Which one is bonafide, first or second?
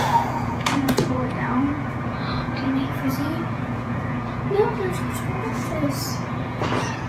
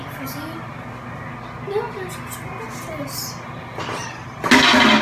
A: second